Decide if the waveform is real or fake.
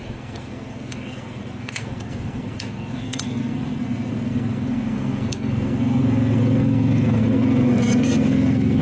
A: fake